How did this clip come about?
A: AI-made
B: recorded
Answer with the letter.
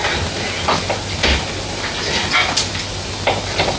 B